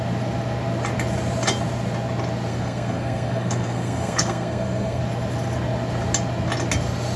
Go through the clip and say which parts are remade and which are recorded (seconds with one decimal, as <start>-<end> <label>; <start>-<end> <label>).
0.0-2.5 recorded; 2.5-5.0 remade; 5.0-7.2 recorded

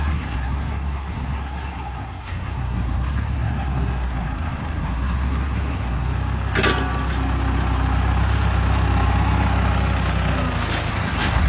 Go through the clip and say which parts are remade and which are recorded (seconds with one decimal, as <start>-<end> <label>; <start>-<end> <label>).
0.0-6.1 remade; 6.1-10.9 recorded; 10.9-11.5 remade

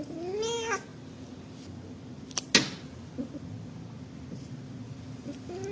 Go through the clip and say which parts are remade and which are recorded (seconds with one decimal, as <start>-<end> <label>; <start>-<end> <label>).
0.0-5.7 recorded